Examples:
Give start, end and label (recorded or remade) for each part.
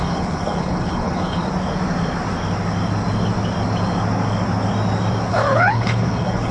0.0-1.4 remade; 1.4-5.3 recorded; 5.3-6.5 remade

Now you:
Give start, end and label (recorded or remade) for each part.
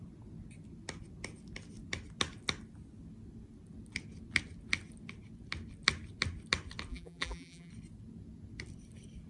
0.0-6.9 recorded; 6.9-7.7 remade; 7.7-9.3 recorded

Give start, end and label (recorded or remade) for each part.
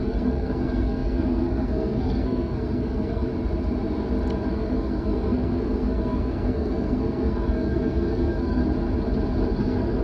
0.0-3.3 remade; 3.3-4.5 recorded; 4.5-8.6 remade; 8.6-9.6 recorded; 9.6-10.0 remade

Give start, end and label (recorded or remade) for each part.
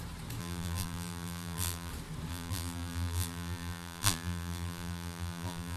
0.0-0.4 recorded; 0.4-1.9 remade; 1.9-2.3 recorded; 2.3-5.8 remade